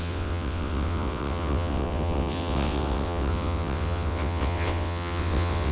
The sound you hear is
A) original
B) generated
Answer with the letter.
B